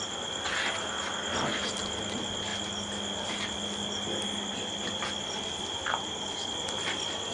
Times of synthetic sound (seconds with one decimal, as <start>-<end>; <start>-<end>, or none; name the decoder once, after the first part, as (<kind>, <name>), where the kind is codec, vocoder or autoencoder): none